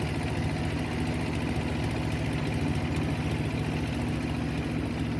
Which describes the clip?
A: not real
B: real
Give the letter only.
B